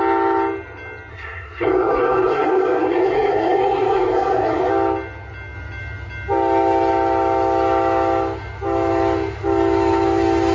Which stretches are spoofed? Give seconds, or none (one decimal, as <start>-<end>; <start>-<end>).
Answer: 1.1-4.7